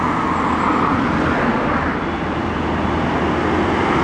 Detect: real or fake real